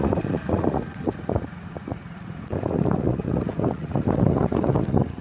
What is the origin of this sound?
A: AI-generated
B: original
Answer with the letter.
A